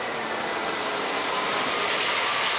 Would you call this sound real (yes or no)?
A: yes